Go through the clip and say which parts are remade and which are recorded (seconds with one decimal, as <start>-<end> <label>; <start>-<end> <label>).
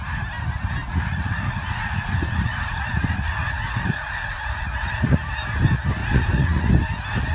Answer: 0.0-0.8 recorded; 0.8-5.2 remade; 5.2-6.0 recorded; 6.0-6.7 remade; 6.7-7.3 recorded